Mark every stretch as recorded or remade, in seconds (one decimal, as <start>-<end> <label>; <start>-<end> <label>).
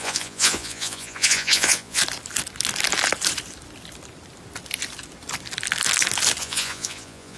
0.0-2.0 remade; 2.0-6.4 recorded; 6.4-7.4 remade